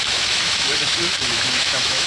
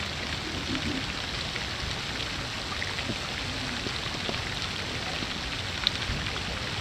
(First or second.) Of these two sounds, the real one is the second